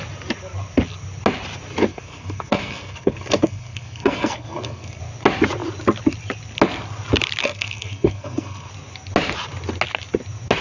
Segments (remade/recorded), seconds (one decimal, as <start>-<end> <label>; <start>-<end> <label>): 0.0-1.9 recorded; 1.9-5.0 remade; 5.0-7.4 recorded; 7.4-8.7 remade; 8.7-10.6 recorded